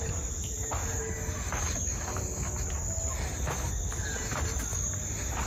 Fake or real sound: real